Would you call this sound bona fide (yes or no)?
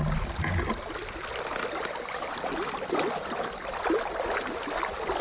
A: yes